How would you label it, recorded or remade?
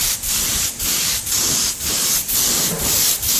recorded